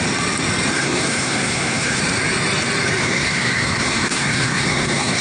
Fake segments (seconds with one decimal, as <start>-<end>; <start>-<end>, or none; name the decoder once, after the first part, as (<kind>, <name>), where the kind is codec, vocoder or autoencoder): 0.7-2.0 (codec, SNAC); 3.0-5.2